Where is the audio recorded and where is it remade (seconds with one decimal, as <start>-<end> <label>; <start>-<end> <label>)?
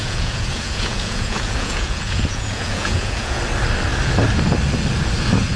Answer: 0.0-3.4 remade; 3.4-5.6 recorded